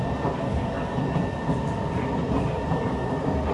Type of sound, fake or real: real